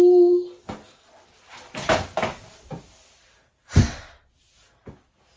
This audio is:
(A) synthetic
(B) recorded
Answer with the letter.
B